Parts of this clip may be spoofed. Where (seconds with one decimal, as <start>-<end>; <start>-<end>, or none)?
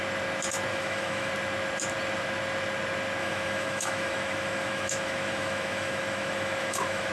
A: 0.7-1.3; 3.2-7.1